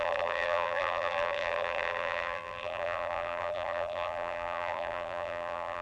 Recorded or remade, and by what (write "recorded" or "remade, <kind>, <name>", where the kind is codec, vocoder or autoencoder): remade, vocoder, BigVGAN v2